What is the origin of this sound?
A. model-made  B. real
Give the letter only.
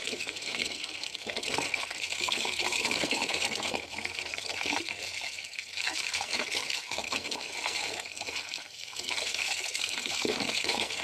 A